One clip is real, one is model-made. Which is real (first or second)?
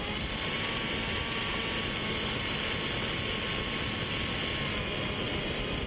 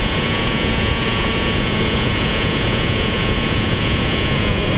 first